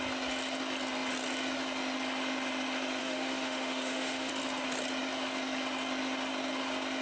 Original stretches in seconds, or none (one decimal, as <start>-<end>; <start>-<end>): 0.0-3.0; 4.3-7.0